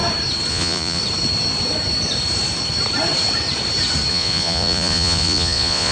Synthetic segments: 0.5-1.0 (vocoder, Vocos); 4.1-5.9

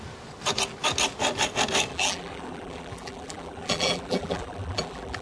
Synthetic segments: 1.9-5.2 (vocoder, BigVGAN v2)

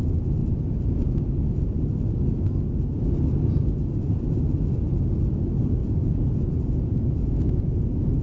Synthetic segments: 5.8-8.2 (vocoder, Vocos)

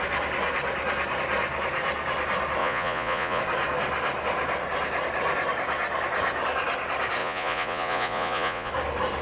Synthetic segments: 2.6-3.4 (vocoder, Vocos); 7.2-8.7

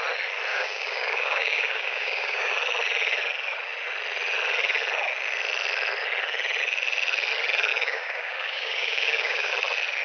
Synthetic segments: 0.5-2.5 (codec, DAC); 7.7-9.5

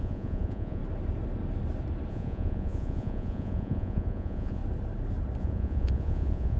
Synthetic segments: 0.0-0.8 (vocoder, Vocos); 2.1-4.6; 5.4-6.6

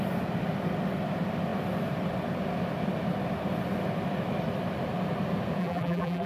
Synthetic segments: 5.6-6.3 (vocoder, BigVGAN v2)